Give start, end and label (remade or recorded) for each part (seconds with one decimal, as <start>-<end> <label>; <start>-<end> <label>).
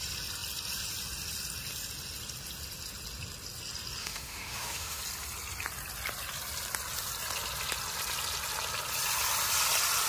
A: 0.0-4.0 recorded; 4.0-5.0 remade; 5.0-10.1 recorded